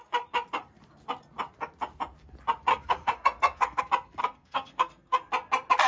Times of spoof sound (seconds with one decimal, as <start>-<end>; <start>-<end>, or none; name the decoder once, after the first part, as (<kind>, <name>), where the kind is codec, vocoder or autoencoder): 2.7-3.8 (codec, SNAC); 4.2-5.3